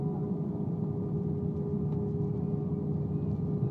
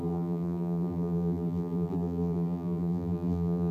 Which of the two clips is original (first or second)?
first